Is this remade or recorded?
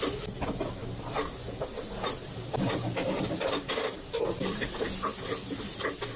recorded